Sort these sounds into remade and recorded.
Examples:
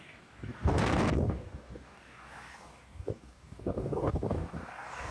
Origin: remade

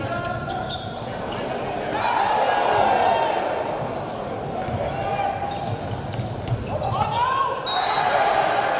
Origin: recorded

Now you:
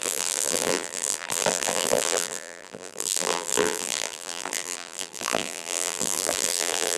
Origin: remade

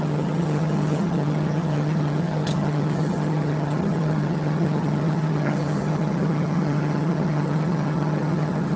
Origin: remade